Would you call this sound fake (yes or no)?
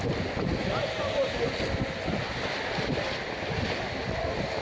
no